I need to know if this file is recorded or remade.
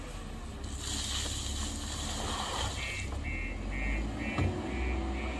recorded